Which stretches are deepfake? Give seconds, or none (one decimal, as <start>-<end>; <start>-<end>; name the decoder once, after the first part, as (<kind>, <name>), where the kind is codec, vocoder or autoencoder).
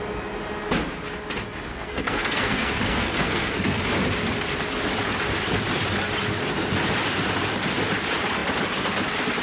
1.7-3.8 (codec, SNAC)